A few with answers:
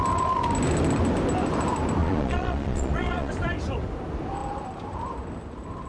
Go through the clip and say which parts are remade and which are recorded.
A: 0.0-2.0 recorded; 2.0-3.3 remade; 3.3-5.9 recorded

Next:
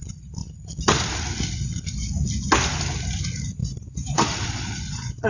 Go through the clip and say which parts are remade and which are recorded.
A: 0.0-3.6 recorded; 3.6-5.3 remade

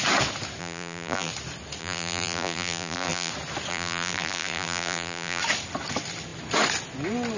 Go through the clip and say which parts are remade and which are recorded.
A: 0.0-0.6 recorded; 0.6-1.3 remade; 1.3-1.8 recorded; 1.8-3.3 remade; 3.3-3.7 recorded; 3.7-5.4 remade; 5.4-7.4 recorded

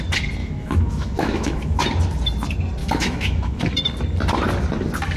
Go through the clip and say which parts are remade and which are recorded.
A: 0.0-0.4 recorded; 0.4-1.8 remade; 1.8-2.8 recorded; 2.8-3.6 remade; 3.6-5.2 recorded

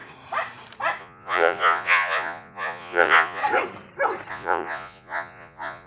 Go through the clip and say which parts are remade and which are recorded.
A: 0.0-1.0 recorded; 1.0-3.4 remade; 3.4-4.3 recorded; 4.3-5.9 remade

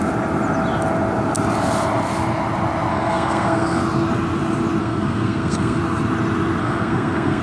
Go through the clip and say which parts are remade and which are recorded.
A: 0.0-2.9 recorded; 2.9-3.8 remade; 3.8-4.8 recorded; 4.8-5.8 remade; 5.8-6.6 recorded; 6.6-7.4 remade

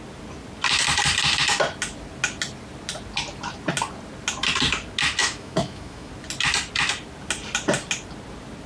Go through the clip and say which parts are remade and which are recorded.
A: 0.0-5.2 recorded; 5.2-6.1 remade; 6.1-8.7 recorded